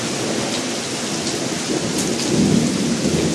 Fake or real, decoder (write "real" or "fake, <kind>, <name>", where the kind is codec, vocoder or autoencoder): real